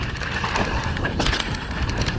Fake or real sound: real